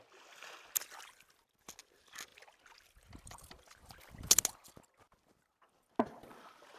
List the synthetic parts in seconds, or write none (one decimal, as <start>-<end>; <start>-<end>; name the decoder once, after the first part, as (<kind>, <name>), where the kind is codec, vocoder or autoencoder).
none